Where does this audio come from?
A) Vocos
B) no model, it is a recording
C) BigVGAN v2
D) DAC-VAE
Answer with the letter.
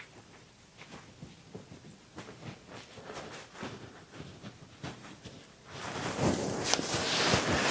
B